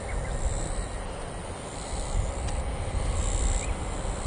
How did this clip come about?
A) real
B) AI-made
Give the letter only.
A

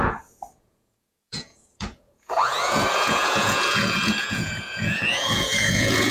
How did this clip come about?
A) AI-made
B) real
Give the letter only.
A